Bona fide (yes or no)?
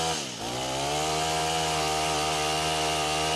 yes